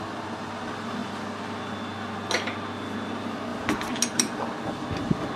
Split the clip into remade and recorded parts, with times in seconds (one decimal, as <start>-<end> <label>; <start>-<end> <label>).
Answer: 0.0-5.4 recorded